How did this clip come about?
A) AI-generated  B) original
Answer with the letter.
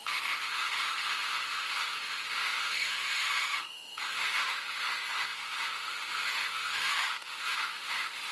A